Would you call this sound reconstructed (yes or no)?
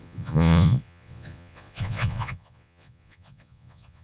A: yes